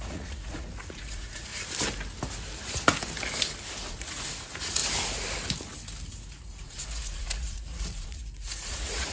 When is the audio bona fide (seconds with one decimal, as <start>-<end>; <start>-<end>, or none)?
1.5-3.9; 4.8-6.1